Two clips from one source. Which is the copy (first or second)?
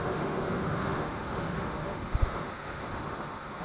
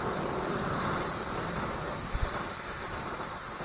first